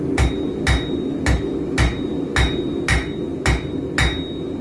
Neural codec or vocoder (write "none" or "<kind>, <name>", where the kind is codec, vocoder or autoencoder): none